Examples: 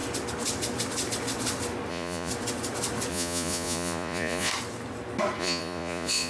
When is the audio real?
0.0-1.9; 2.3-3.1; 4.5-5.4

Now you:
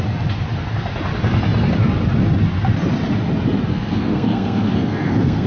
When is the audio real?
0.0-3.7

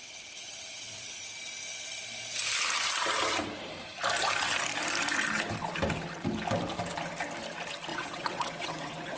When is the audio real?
1.2-7.9

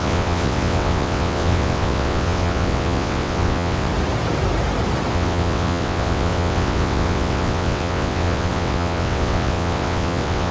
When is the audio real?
3.9-5.1

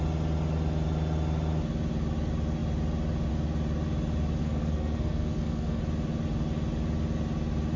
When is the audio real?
0.0-4.4; 5.8-7.8